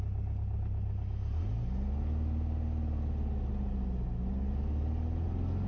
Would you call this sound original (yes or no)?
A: yes